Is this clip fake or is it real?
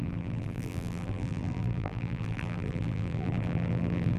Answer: fake